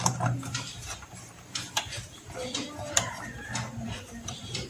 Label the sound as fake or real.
fake